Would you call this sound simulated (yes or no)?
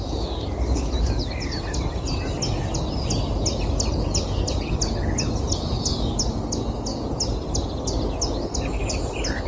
no